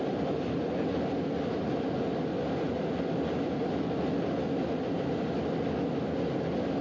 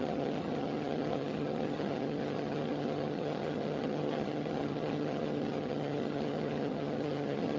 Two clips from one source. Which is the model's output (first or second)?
second